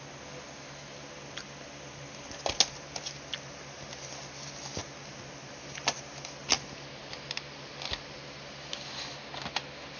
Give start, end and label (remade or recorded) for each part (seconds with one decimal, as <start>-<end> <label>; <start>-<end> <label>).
0.0-10.0 recorded